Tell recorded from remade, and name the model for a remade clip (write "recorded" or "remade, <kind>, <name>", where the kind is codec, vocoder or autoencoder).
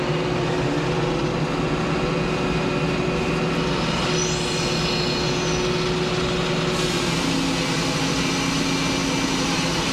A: recorded